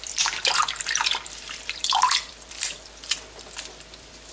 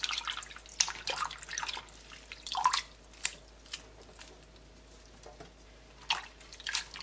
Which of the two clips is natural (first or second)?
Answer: second